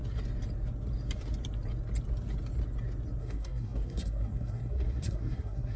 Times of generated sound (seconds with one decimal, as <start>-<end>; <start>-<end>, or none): 3.2-5.8